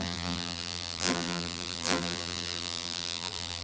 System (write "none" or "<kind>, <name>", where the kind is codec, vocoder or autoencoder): vocoder, BigVGAN v2